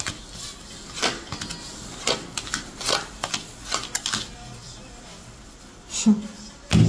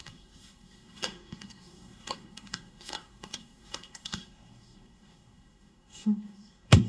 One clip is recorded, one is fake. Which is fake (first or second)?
second